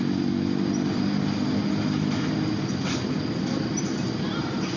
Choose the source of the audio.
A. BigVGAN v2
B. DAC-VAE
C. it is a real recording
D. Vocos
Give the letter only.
C